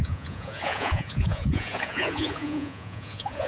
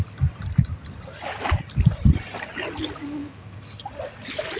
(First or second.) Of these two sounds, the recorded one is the second